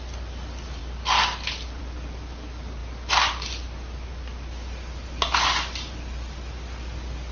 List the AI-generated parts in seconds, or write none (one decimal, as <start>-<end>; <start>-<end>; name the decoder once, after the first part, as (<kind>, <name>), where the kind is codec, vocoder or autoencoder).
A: none